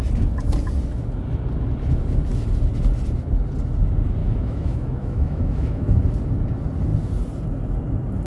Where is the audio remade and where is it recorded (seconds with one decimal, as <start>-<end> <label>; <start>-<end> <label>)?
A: 0.0-4.2 recorded; 4.2-6.0 remade; 6.0-8.3 recorded